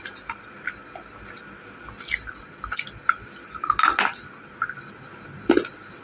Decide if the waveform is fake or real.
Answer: real